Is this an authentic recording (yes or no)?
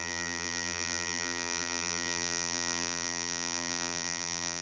no